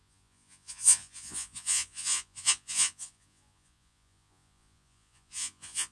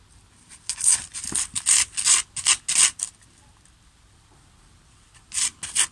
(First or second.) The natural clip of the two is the second